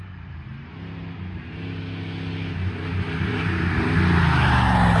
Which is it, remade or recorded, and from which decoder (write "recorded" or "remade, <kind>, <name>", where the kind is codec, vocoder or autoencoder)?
recorded